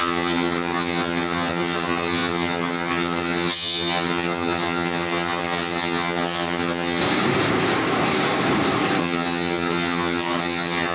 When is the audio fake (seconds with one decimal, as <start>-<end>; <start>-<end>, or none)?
0.0-7.0; 9.0-10.9